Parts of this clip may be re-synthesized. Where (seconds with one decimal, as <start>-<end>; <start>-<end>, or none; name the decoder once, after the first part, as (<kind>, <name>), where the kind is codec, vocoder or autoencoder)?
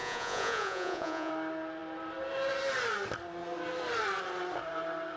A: 0.0-1.3 (vocoder, Vocos)